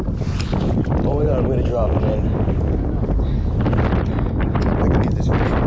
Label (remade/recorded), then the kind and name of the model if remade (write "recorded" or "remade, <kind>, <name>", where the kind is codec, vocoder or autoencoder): recorded